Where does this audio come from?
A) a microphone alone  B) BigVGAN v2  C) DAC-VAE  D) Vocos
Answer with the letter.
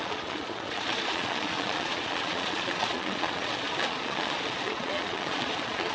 D